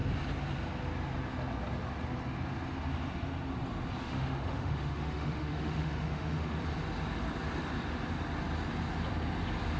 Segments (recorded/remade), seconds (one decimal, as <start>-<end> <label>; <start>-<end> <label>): 0.0-4.0 recorded; 4.0-6.6 remade; 6.6-9.8 recorded